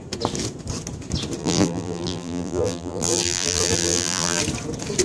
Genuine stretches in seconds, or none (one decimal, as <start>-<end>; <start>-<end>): 0.0-1.4; 4.4-5.0